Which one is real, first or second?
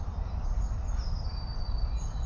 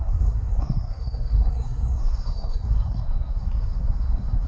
first